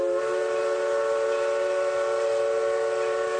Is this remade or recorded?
recorded